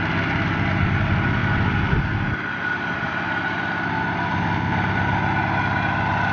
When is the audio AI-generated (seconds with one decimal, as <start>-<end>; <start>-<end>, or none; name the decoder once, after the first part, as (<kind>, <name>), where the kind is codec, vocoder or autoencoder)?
none